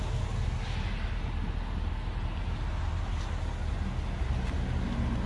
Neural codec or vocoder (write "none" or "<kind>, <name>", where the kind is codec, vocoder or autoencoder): none